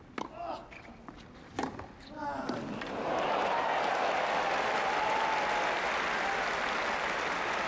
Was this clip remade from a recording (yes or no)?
no